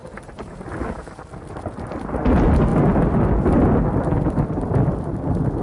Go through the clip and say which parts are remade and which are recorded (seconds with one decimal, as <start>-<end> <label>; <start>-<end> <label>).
0.0-1.2 remade; 1.2-5.6 recorded